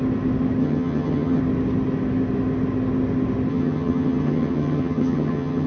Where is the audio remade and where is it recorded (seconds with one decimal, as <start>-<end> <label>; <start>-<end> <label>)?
0.0-0.6 recorded; 0.6-1.4 remade; 1.4-3.5 recorded; 3.5-5.7 remade